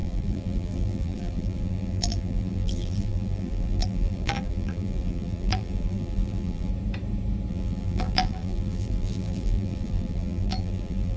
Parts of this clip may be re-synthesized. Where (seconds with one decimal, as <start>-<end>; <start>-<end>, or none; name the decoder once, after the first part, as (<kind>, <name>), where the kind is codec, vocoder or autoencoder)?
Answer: 0.0-6.7 (vocoder, BigVGAN v2); 7.5-11.2